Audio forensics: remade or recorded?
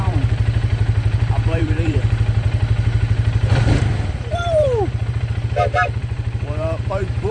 remade